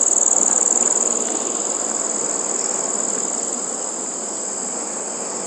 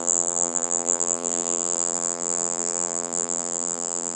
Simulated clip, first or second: second